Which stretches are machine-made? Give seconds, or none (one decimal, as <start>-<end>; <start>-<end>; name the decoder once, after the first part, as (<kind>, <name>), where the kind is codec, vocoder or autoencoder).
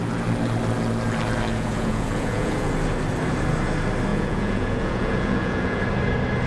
1.5-2.7 (vocoder, Vocos); 4.1-5.8